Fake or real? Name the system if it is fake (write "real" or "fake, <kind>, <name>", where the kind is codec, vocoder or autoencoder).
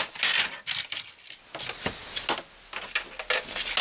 real